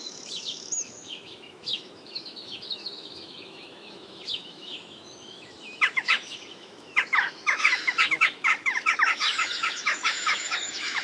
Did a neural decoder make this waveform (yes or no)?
yes